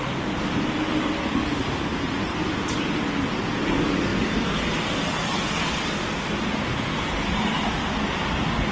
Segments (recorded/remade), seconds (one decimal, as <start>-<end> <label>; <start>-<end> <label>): 0.0-8.7 recorded